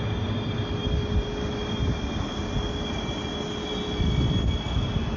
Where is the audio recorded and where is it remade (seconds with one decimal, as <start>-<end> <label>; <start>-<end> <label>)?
0.0-5.2 recorded